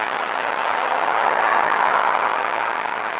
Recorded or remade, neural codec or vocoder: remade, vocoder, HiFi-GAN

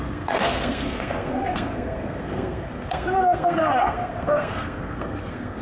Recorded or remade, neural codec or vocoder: remade, codec, SNAC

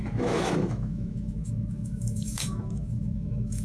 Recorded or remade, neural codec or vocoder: remade, autoencoder, DAC-VAE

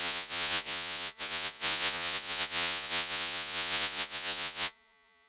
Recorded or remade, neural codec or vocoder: remade, vocoder, Vocos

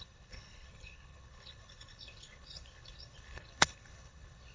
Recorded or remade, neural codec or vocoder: remade, codec, HILCodec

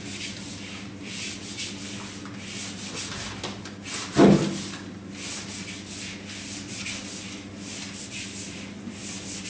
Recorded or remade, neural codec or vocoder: recorded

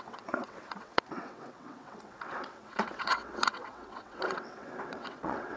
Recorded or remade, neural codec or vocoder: remade, vocoder, WaveNeXt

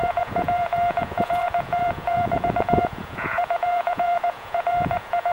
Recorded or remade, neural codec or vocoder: remade, vocoder, Vocos